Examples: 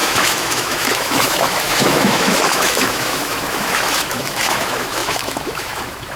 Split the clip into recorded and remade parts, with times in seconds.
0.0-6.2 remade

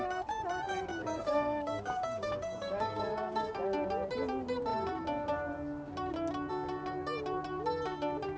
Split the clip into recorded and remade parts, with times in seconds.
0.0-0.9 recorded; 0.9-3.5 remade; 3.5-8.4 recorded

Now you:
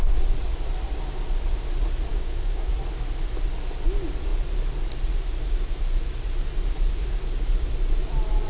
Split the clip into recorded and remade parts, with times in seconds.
0.0-2.1 recorded; 2.1-2.7 remade; 2.7-8.5 recorded

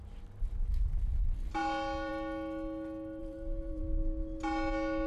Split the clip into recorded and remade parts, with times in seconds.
0.0-3.2 recorded; 3.2-3.8 remade; 3.8-5.1 recorded